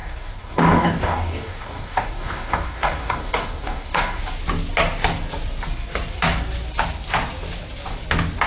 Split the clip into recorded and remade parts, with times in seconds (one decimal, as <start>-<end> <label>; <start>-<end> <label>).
0.0-4.2 remade; 4.2-8.5 recorded